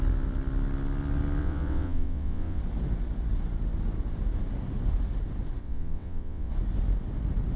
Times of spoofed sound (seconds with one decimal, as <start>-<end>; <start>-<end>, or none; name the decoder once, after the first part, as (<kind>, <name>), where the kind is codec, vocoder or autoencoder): 1.4-2.6 (vocoder, WaveNeXt); 5.6-6.5